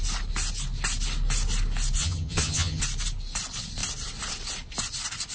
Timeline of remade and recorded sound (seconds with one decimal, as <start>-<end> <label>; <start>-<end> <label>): 0.0-2.0 recorded; 2.0-2.8 remade; 2.8-5.3 recorded